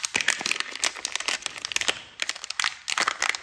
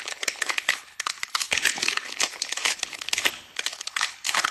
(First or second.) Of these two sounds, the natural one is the first